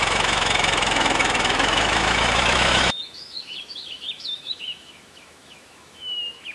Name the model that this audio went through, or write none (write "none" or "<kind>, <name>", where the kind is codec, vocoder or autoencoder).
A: autoencoder, DAC-VAE